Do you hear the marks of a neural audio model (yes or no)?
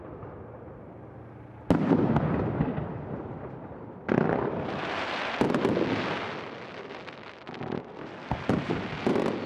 no